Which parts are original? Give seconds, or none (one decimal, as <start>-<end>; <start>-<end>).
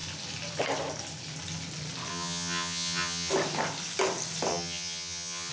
0.0-2.1; 3.3-4.5